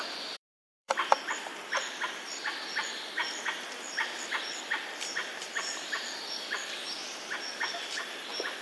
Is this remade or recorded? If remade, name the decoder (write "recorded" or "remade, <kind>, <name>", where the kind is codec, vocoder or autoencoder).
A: remade, vocoder, BigVGAN v2